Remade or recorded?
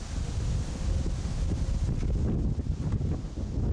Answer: recorded